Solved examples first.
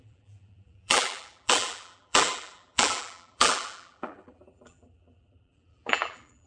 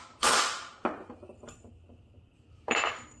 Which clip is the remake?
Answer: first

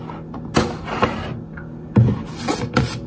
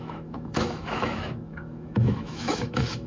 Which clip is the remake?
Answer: second